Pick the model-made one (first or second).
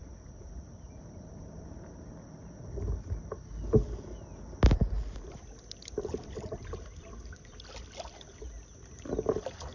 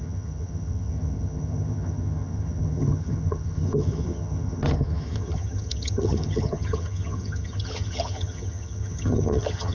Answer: second